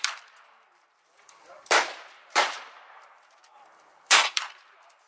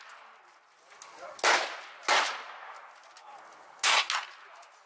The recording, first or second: second